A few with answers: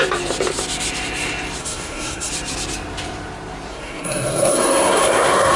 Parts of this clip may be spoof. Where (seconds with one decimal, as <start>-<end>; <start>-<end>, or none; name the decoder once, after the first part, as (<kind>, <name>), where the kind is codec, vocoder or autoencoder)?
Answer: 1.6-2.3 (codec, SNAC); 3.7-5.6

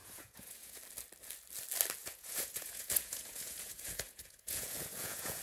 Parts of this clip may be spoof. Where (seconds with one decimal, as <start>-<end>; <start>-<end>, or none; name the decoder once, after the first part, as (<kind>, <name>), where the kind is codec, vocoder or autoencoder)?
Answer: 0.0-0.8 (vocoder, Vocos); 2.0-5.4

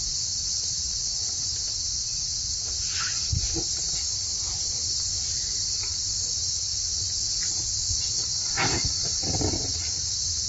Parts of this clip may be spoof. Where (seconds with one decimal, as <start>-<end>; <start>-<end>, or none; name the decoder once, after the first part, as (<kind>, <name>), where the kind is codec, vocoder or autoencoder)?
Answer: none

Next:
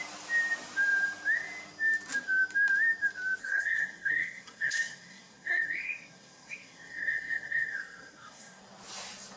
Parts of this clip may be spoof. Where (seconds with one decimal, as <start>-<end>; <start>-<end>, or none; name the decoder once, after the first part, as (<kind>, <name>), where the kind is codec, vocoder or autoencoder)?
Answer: 3.4-8.6 (codec, SNAC)